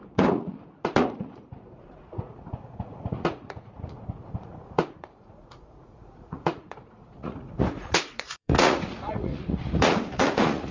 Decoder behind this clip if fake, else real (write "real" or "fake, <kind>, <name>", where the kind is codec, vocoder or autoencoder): fake, vocoder, Vocos